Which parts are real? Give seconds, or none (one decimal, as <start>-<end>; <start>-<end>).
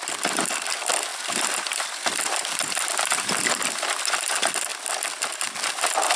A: 4.7-5.3